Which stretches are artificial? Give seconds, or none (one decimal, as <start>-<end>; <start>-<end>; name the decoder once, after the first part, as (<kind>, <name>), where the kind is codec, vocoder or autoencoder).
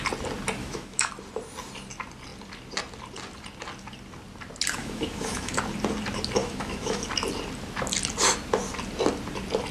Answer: 0.6-1.1 (autoencoder, DAC-VAE); 4.8-5.6; 6.4-7.0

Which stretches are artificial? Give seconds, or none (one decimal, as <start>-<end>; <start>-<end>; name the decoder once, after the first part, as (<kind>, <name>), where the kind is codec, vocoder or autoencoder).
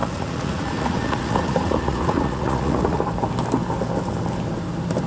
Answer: 0.0-3.0 (vocoder, Vocos)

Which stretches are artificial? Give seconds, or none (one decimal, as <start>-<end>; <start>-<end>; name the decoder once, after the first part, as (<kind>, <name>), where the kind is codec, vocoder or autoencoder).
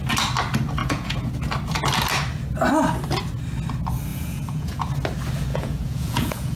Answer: 0.8-1.3 (vocoder, Vocos); 4.1-4.8; 5.5-6.6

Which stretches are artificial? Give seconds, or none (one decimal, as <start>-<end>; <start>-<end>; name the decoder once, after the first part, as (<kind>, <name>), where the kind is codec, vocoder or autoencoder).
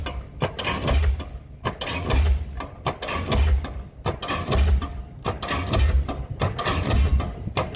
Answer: none